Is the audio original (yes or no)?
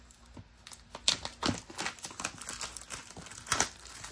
yes